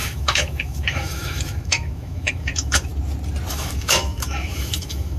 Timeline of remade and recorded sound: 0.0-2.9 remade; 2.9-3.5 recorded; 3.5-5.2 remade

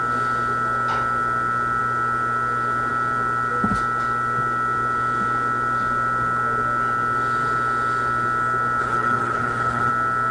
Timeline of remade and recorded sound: 0.0-8.8 recorded; 8.8-9.9 remade; 9.9-10.3 recorded

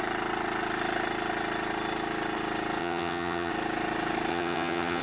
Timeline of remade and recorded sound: 0.0-2.8 recorded; 2.8-3.5 remade; 3.5-4.3 recorded; 4.3-5.0 remade

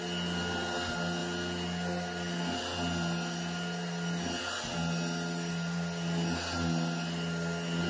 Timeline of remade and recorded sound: 0.0-7.9 recorded